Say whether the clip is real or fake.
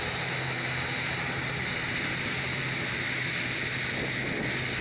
real